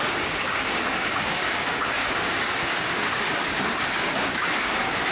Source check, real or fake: fake